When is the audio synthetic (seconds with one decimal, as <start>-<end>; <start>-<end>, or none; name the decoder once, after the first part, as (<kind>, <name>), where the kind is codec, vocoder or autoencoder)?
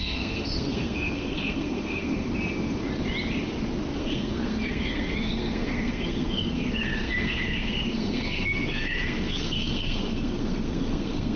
0.0-2.3 (codec, SNAC); 3.9-11.4